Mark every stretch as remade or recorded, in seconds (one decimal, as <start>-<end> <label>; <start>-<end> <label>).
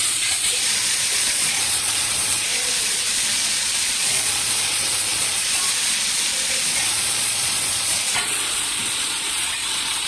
0.0-10.1 remade